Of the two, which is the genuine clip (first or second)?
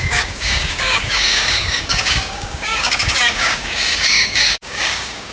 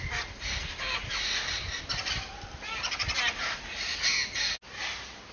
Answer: second